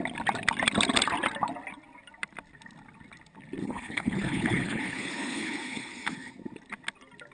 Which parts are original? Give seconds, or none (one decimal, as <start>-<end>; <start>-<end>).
0.0-3.6; 6.3-7.3